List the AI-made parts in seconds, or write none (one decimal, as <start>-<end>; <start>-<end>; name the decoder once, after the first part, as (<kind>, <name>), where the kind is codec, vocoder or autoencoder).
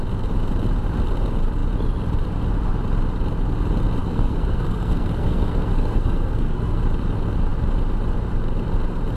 4.0-6.8 (codec, SNAC)